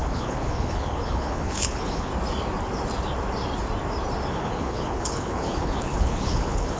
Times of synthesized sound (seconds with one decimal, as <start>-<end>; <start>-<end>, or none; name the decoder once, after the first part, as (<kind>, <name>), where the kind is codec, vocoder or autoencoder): 0.0-2.1 (codec, HILCodec); 4.3-6.8